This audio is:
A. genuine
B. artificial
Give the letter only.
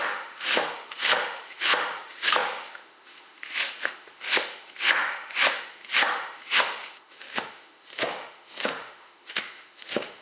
B